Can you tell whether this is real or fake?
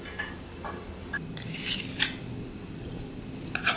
real